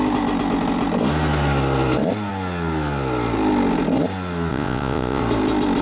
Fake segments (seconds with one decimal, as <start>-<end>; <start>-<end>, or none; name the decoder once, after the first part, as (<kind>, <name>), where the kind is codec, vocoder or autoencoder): 4.5-5.2 (vocoder, Vocos)